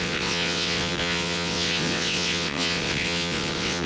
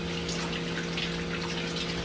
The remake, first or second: first